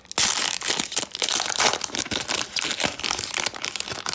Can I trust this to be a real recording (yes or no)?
yes